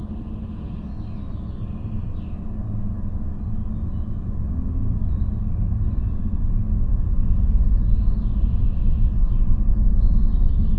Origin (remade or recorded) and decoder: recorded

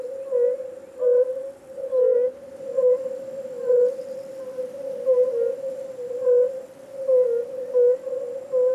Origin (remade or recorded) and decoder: recorded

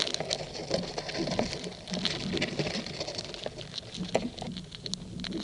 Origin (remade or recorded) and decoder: recorded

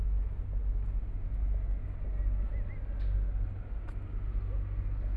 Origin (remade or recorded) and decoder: recorded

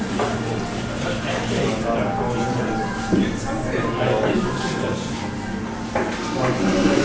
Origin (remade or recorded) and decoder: recorded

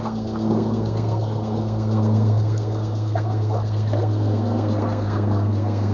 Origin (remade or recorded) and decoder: remade, codec, SNAC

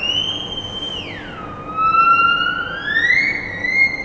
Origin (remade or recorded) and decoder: recorded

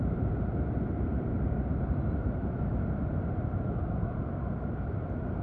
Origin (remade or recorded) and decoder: remade, vocoder, BigVGAN v2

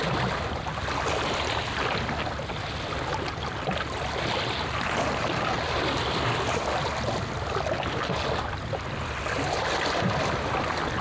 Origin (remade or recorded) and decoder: recorded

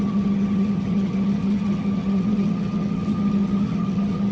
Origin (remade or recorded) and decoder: remade, vocoder, HiFi-GAN